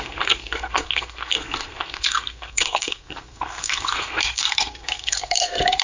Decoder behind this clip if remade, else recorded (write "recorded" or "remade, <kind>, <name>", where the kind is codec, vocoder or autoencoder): remade, codec, SNAC